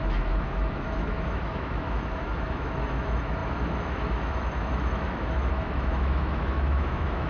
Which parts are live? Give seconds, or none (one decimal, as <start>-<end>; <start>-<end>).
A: none